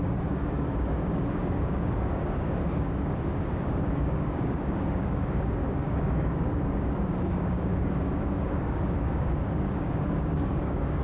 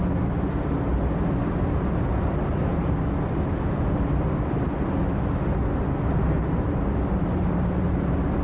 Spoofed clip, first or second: first